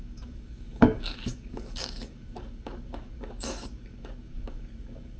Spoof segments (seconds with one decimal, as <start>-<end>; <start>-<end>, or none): 0.0-5.2

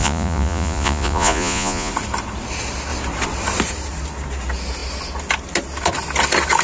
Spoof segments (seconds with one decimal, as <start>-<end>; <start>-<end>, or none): 0.0-1.9

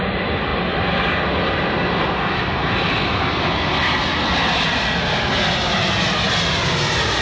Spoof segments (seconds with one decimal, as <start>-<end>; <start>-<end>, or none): none

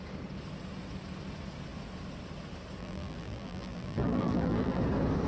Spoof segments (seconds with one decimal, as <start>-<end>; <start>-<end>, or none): 2.8-4.8

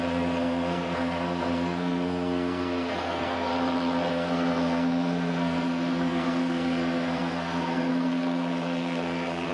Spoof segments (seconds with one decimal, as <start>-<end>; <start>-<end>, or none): 0.0-3.5; 4.1-9.5